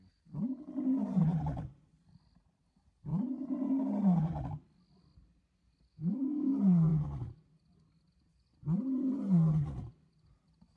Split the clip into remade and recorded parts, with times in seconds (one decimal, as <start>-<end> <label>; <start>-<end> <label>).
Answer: 0.0-5.9 recorded; 5.9-6.5 remade; 6.5-10.8 recorded